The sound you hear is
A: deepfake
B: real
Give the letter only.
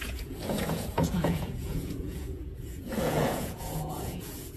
A